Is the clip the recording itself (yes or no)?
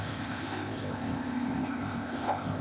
no